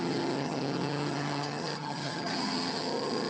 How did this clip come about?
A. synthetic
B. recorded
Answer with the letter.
A